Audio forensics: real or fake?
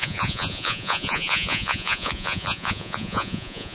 fake